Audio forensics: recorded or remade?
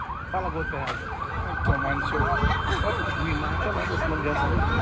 recorded